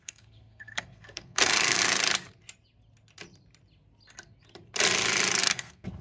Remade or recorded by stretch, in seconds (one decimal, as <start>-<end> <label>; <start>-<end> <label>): 0.0-1.8 remade; 1.8-5.4 recorded; 5.4-6.0 remade